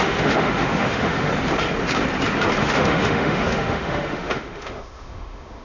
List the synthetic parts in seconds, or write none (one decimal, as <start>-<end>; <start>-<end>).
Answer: 0.0-1.3; 2.6-5.6